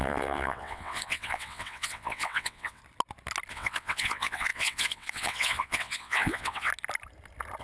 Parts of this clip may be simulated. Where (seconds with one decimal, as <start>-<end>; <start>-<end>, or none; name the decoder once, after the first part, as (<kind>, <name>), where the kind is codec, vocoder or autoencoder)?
0.0-2.8 (vocoder, WaveNeXt); 3.5-6.7